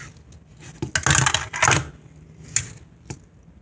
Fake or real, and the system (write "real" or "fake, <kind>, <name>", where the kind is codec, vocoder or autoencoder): real